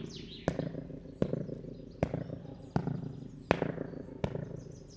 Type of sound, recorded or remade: recorded